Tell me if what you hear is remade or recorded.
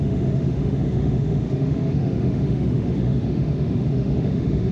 remade